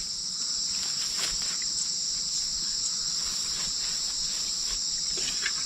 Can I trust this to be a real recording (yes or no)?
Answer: yes